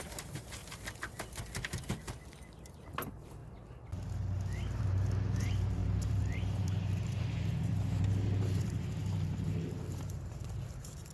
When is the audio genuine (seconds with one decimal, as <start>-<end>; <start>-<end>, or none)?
0.6-2.7; 3.4-4.8

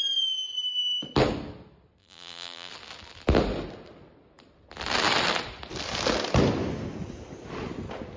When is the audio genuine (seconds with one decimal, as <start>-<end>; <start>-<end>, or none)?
0.0-2.0; 2.7-8.2

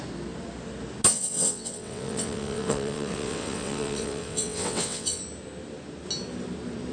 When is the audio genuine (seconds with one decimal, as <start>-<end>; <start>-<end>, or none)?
0.0-1.1; 5.2-6.9

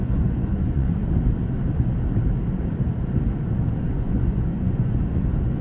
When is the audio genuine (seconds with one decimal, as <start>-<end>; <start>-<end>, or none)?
1.0-3.7

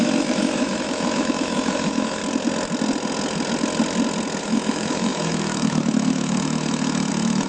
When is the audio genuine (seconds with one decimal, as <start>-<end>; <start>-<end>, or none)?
2.2-4.4

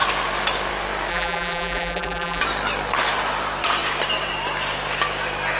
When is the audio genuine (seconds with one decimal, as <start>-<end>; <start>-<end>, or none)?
0.0-1.1; 2.4-5.6

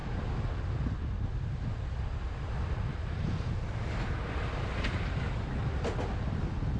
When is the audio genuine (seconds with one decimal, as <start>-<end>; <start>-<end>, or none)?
0.6-2.9; 5.7-6.8

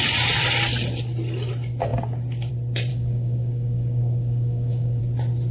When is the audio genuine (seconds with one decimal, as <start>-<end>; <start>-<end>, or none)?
0.0-2.9; 5.0-5.5